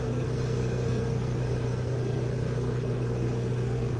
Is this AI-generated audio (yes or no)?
yes